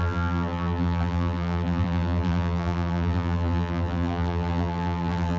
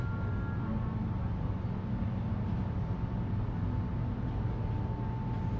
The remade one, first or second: first